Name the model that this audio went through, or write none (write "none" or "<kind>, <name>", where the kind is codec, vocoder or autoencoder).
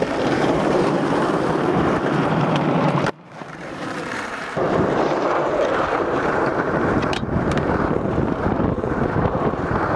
vocoder, BigVGAN v2